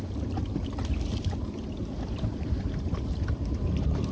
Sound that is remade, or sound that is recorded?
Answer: remade